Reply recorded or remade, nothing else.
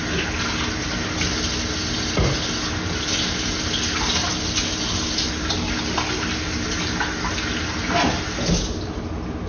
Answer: recorded